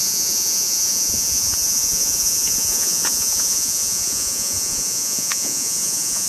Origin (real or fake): fake